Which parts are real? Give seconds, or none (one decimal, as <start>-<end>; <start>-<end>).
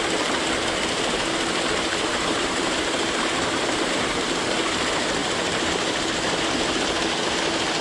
0.0-2.1; 4.1-5.2; 5.7-7.8